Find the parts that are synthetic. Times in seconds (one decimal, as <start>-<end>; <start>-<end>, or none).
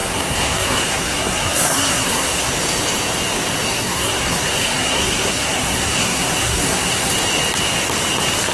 0.0-2.5; 3.7-7.1